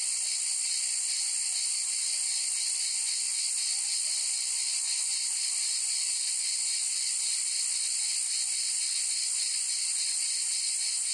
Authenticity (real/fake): real